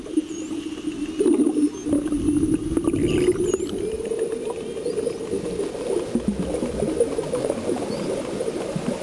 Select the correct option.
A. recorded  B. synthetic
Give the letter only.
A